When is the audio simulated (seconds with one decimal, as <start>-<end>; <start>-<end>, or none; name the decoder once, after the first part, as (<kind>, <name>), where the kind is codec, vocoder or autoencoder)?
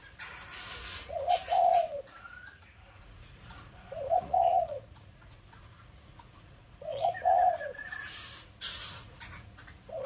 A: 0.0-10.1 (vocoder, Vocos)